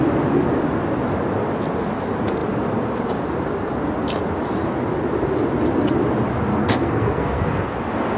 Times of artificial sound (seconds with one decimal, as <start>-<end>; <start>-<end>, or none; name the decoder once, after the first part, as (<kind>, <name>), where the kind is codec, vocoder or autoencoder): 6.5-7.7 (codec, SNAC)